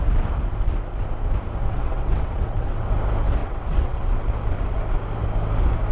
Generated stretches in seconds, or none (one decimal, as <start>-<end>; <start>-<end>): 1.6-2.9; 3.4-4.0